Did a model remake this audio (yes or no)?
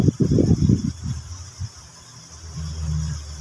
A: no